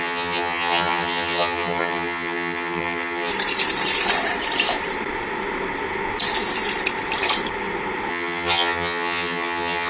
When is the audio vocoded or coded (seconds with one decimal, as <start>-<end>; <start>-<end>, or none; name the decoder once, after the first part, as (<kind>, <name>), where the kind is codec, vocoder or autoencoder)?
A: 0.0-3.3 (vocoder, HiFi-GAN); 8.1-9.9